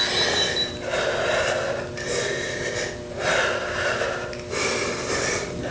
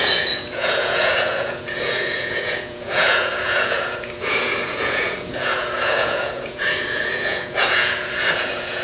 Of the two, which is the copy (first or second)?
second